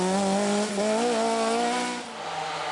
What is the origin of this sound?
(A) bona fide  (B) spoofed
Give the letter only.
A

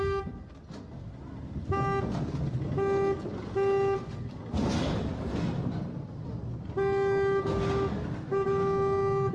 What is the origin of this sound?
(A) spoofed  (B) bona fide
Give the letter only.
B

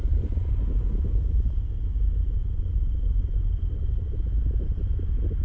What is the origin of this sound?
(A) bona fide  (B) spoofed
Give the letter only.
A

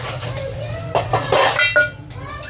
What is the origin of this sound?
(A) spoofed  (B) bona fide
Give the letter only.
B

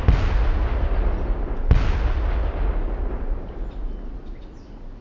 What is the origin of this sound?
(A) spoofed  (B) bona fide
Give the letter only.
B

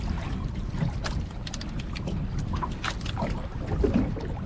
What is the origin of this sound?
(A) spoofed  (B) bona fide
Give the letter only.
B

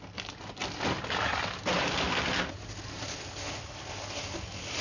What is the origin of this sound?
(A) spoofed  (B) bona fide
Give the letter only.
B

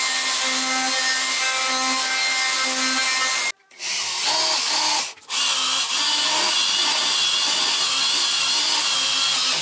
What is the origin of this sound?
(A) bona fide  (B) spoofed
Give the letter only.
A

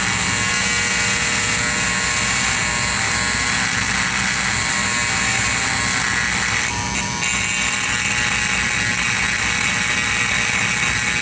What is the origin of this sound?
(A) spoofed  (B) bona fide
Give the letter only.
B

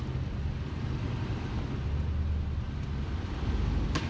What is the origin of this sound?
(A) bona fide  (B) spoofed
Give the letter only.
A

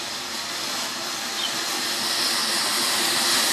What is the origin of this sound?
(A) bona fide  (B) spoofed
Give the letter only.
B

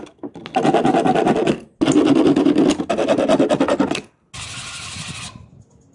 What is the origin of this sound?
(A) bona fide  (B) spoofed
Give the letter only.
A